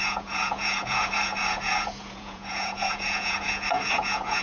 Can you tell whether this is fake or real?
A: fake